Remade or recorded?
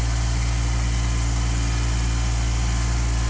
recorded